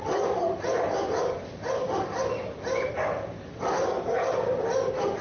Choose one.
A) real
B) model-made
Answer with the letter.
A